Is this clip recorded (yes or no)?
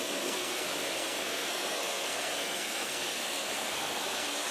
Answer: no